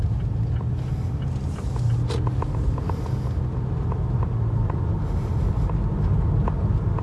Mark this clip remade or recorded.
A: recorded